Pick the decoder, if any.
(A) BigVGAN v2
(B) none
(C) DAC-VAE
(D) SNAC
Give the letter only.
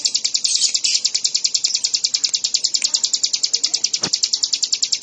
B